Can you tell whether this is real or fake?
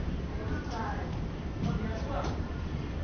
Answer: fake